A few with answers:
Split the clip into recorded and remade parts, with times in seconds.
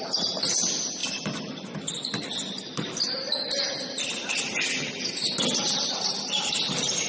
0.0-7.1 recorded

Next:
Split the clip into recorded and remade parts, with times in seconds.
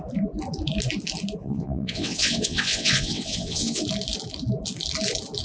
0.0-1.4 recorded; 1.4-3.8 remade; 3.8-5.4 recorded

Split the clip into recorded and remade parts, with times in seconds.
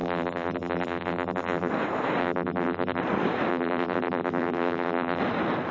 0.0-1.7 remade; 1.7-2.2 recorded; 2.2-3.0 remade; 3.0-3.5 recorded; 3.5-5.2 remade; 5.2-5.7 recorded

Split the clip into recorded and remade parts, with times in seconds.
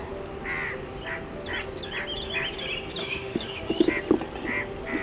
0.0-3.0 recorded; 3.0-3.9 remade; 3.9-5.0 recorded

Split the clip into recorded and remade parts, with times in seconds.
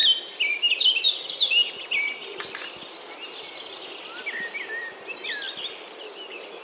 0.0-6.6 recorded